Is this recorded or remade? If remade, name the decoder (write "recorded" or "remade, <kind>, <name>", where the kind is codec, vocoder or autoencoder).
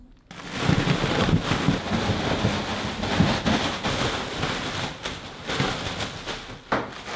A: recorded